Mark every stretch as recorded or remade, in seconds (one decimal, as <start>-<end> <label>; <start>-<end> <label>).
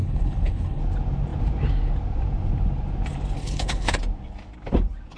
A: 0.0-0.8 remade; 0.8-3.4 recorded; 3.4-4.0 remade; 4.0-5.2 recorded